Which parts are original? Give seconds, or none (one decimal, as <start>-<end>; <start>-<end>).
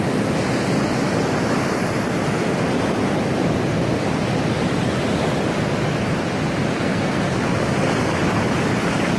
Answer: 0.0-6.7; 7.2-9.2